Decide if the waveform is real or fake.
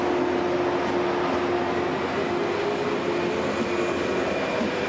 real